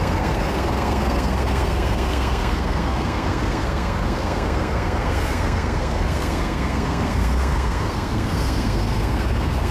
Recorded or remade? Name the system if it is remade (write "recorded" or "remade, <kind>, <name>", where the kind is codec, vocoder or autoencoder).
remade, codec, SNAC